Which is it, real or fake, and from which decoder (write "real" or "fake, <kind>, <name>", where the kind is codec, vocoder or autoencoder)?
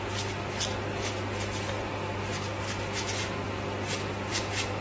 real